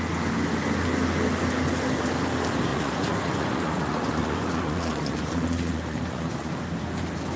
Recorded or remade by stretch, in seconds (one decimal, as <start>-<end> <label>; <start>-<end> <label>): 0.0-2.7 recorded; 2.7-6.5 remade; 6.5-7.4 recorded